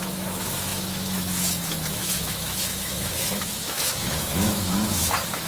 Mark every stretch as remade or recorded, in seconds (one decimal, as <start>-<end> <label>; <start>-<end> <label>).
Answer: 0.0-5.5 remade